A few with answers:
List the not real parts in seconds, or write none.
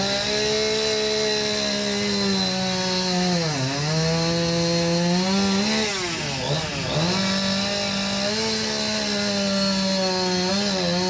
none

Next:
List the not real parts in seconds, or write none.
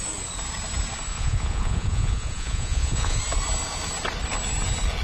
1.1-3.2 (vocoder, Vocos)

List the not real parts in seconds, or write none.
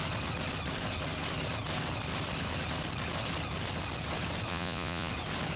4.5-5.1 (vocoder, Vocos)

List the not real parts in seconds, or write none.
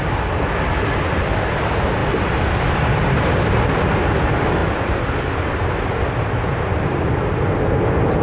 none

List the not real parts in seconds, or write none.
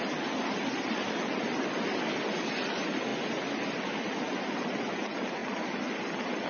none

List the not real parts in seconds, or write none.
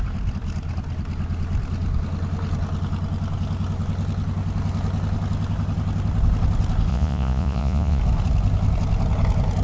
6.9-8.0 (vocoder, Vocos)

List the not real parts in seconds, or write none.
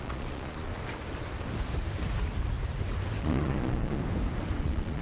0.0-0.7 (vocoder, Vocos); 3.2-4.0; 4.6-5.0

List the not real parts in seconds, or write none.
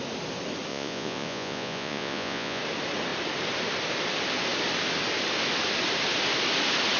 0.7-2.6 (vocoder, Vocos)